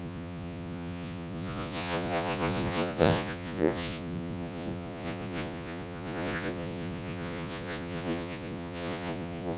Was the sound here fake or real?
fake